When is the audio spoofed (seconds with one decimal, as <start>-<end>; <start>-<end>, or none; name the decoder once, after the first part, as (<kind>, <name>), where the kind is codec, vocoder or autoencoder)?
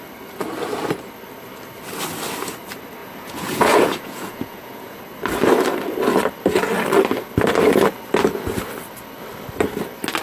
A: 3.0-5.0 (vocoder, Vocos)